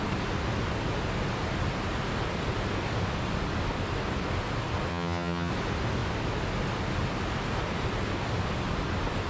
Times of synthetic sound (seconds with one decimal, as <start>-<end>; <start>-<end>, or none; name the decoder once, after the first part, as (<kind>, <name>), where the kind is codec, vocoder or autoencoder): 4.9-5.5 (vocoder, HiFi-GAN)